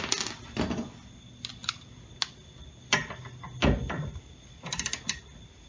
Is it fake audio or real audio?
real